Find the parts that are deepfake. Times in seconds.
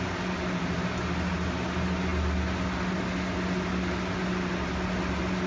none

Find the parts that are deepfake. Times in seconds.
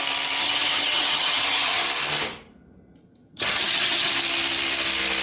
0.4-1.8 (vocoder, HiFi-GAN); 3.0-4.1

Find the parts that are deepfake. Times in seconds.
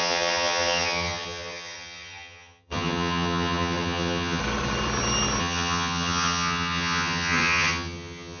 0.0-4.4 (vocoder, HiFi-GAN); 5.4-8.4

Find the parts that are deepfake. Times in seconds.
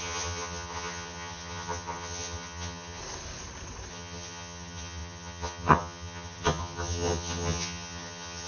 0.0-3.0 (vocoder, HiFi-GAN); 3.9-8.5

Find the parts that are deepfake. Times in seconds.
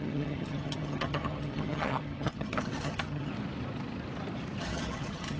0.0-3.3 (vocoder, HiFi-GAN); 4.6-5.4